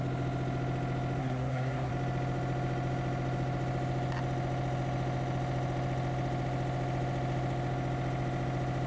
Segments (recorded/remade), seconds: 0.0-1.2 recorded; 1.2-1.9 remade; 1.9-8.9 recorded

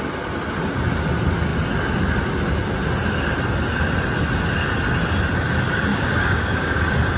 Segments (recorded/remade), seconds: 0.0-5.9 recorded; 5.9-6.8 remade; 6.8-7.2 recorded

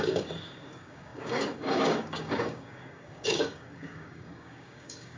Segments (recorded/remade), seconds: 0.0-5.2 remade

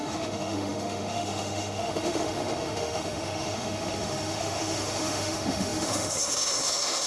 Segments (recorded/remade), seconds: 0.0-7.1 remade

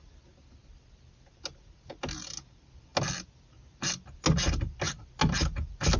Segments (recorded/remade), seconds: 0.0-6.0 recorded